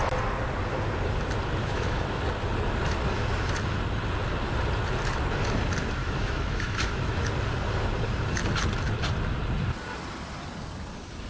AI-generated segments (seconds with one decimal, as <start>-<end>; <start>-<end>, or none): 1.6-2.2; 6.0-7.2